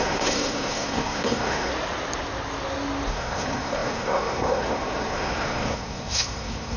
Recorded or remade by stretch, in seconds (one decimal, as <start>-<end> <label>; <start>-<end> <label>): 0.0-1.7 remade; 1.7-3.1 recorded; 3.1-6.8 remade